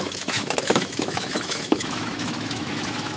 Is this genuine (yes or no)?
no